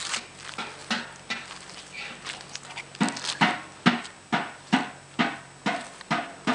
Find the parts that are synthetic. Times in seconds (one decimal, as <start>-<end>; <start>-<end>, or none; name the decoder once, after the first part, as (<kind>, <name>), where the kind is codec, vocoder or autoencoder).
none